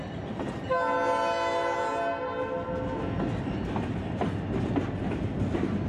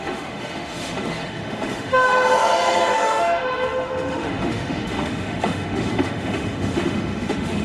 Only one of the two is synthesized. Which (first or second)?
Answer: second